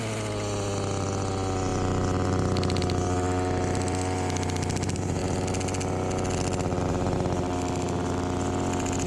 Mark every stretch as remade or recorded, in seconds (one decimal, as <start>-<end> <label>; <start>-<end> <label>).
0.0-9.1 recorded